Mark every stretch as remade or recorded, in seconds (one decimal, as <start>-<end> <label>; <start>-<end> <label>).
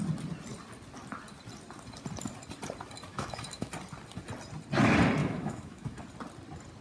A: 0.0-3.1 recorded; 3.1-3.7 remade; 3.7-5.2 recorded; 5.2-6.0 remade; 6.0-6.8 recorded